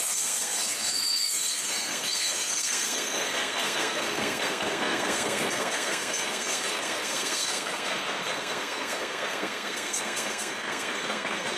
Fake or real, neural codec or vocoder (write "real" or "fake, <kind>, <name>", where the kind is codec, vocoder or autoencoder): fake, codec, SNAC